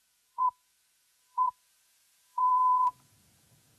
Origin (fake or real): fake